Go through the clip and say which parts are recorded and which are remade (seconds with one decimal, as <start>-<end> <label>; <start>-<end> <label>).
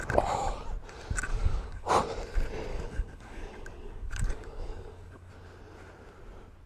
0.0-1.3 recorded; 1.3-1.9 remade; 1.9-2.7 recorded; 2.7-5.3 remade; 5.3-6.7 recorded